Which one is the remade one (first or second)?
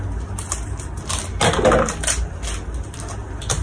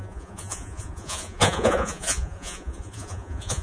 second